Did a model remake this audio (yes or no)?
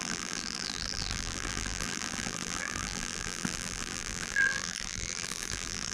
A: yes